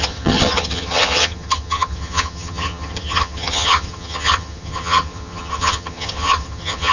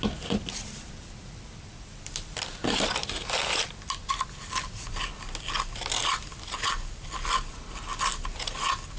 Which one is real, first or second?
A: second